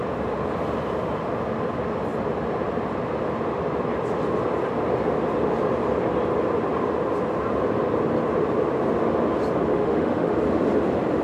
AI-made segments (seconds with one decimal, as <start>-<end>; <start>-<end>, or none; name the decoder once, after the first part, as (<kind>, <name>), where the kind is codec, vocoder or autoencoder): 9.7-10.3 (autoencoder, DAC-VAE)